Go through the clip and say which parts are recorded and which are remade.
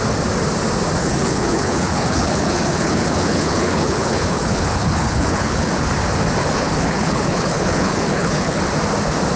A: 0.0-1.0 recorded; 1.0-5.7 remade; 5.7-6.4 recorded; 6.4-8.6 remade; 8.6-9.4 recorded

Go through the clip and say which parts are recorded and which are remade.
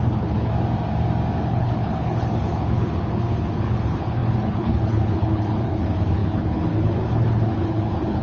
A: 0.0-0.5 remade; 0.5-1.4 recorded; 1.4-8.2 remade